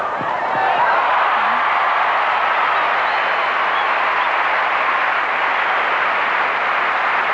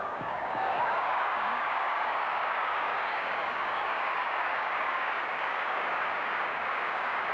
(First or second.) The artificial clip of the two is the second